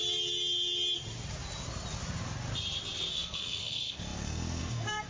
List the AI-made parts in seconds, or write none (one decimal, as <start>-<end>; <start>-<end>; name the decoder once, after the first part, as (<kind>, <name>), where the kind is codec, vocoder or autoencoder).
3.1-5.1 (codec, SNAC)